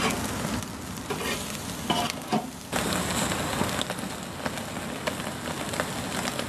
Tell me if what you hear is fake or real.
real